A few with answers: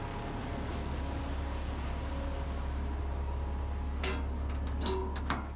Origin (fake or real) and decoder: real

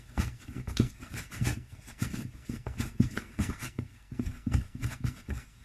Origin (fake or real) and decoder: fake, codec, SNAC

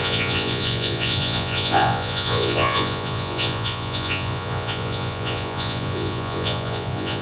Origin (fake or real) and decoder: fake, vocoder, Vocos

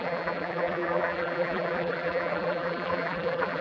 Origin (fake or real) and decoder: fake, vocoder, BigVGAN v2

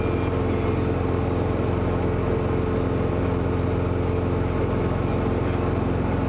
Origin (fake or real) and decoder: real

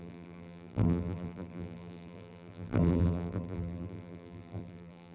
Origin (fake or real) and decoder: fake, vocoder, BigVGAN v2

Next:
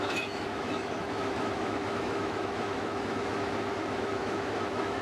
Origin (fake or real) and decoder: fake, autoencoder, DAC-VAE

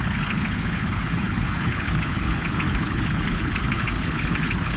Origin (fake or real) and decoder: fake, codec, HILCodec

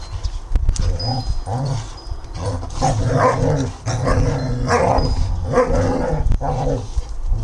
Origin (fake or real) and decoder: real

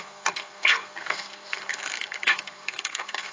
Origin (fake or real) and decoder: fake, codec, SNAC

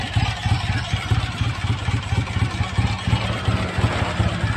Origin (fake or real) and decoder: real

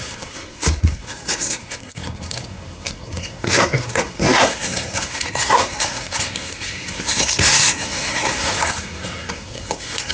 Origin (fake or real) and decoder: fake, codec, SNAC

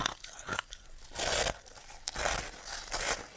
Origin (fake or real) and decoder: real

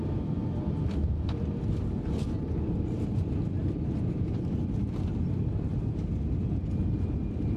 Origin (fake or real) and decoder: real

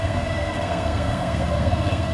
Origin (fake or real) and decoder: fake, codec, SNAC